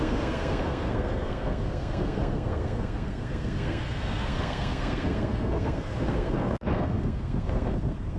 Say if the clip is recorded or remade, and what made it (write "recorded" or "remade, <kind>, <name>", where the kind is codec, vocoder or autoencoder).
remade, codec, SNAC